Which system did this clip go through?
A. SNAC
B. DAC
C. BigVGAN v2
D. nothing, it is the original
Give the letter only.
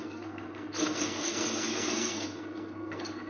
A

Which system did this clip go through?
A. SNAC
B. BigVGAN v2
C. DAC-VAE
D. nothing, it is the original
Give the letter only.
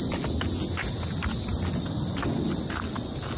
D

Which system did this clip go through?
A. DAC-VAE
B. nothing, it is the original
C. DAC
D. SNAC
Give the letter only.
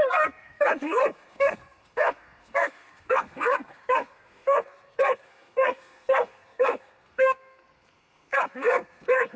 D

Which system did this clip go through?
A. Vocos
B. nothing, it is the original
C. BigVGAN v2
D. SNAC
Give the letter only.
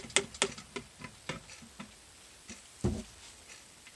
B